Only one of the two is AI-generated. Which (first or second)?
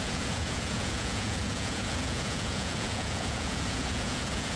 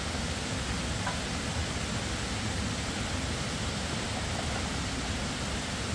first